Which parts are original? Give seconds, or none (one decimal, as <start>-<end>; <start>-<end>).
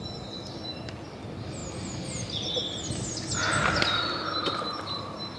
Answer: 0.0-5.4